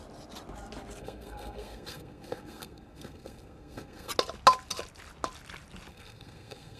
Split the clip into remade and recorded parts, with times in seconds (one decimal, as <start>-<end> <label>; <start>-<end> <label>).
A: 0.0-1.0 recorded; 1.0-4.1 remade; 4.1-5.9 recorded; 5.9-6.8 remade